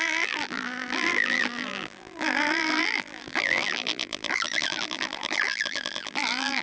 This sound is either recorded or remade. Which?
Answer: remade